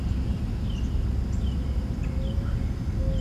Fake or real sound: real